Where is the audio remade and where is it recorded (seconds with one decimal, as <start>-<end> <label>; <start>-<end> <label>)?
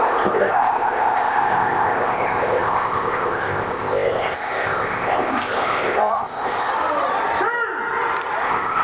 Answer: 0.0-6.7 remade; 6.7-8.4 recorded; 8.4-8.8 remade